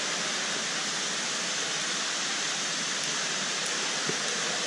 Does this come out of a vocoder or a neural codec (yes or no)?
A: no